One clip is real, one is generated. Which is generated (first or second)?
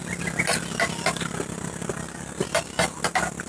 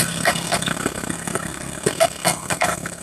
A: second